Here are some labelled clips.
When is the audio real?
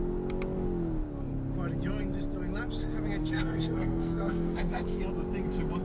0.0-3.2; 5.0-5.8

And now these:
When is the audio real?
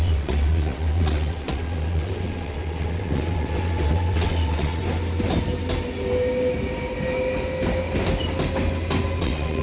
4.8-9.2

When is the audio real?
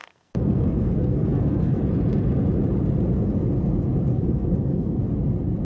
1.8-4.1; 5.0-5.6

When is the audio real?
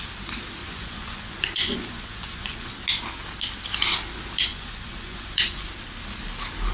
0.0-0.6; 2.7-4.5; 5.7-6.7